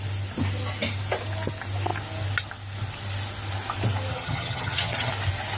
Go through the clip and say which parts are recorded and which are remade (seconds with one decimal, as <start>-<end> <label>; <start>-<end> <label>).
0.0-4.1 recorded; 4.1-5.1 remade; 5.1-5.6 recorded